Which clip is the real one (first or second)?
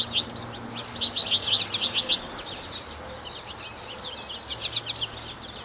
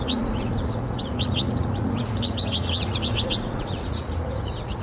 first